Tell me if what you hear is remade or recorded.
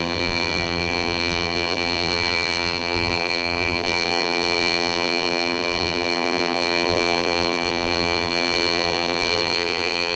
remade